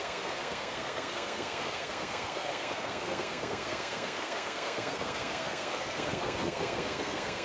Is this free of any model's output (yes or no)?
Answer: no